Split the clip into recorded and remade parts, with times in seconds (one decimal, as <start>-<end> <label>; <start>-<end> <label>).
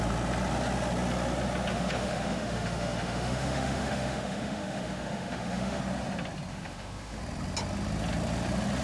0.0-1.7 recorded; 1.7-5.8 remade; 5.8-6.5 recorded; 6.5-7.2 remade; 7.2-8.8 recorded